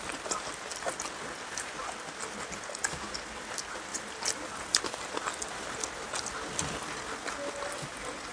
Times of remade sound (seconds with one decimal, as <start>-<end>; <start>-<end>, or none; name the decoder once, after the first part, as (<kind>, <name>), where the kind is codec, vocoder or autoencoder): none